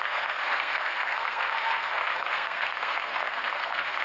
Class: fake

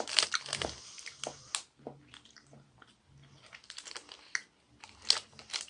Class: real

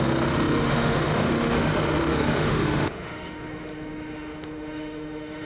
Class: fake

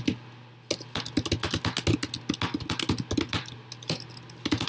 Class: real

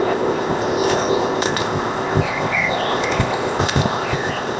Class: fake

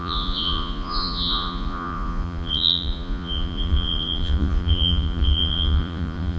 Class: fake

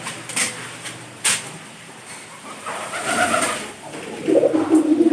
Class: fake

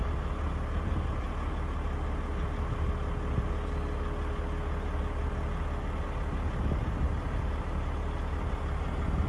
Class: real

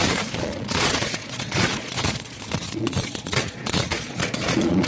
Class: fake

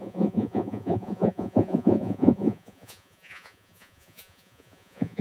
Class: fake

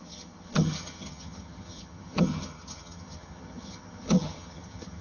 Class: fake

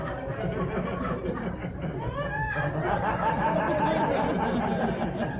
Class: real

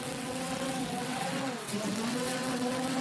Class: fake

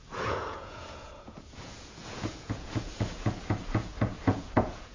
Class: fake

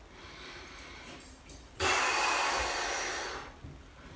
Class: real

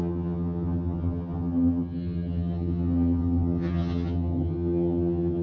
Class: fake